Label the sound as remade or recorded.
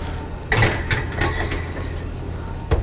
recorded